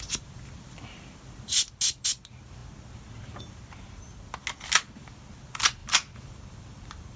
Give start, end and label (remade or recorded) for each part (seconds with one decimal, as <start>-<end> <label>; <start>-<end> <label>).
0.0-5.8 recorded; 5.8-7.2 remade